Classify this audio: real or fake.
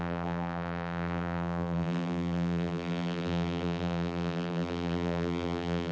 fake